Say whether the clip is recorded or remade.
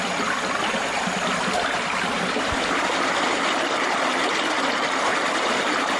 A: recorded